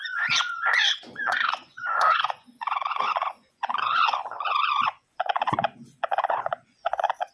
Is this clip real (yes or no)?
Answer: no